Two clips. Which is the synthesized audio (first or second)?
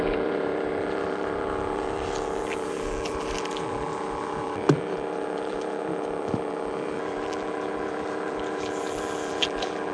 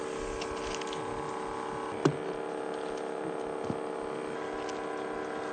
first